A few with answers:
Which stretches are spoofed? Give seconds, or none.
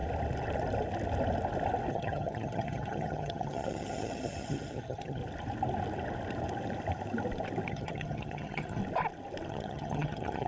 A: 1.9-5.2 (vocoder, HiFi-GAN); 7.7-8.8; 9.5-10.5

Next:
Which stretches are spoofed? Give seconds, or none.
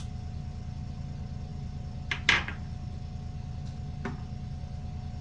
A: none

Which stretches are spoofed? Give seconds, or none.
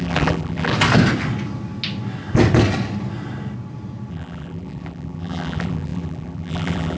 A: 0.0-0.7 (vocoder, BigVGAN v2); 4.1-7.0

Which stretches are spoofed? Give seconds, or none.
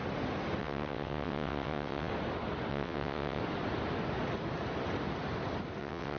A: 0.6-2.1 (vocoder, WaveNeXt); 2.7-3.4; 5.8-6.2